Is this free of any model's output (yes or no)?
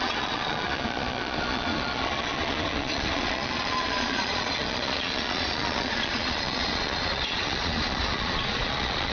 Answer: no